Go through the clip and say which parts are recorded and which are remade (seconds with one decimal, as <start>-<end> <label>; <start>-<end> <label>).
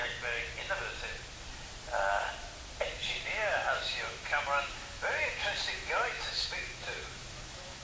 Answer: 0.0-3.0 recorded; 3.0-7.8 remade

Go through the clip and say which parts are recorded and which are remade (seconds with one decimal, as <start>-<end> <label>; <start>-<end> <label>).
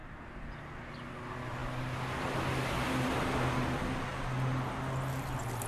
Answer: 0.0-0.5 remade; 0.5-5.7 recorded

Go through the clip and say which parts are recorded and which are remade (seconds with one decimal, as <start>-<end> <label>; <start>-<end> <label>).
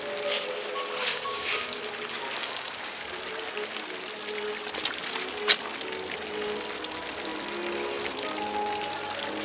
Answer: 0.0-1.0 recorded; 1.0-1.8 remade; 1.8-2.4 recorded; 2.4-3.0 remade; 3.0-9.4 recorded